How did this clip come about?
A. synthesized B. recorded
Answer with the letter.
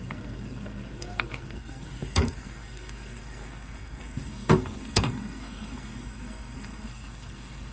A